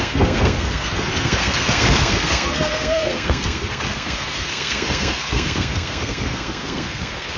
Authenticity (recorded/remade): remade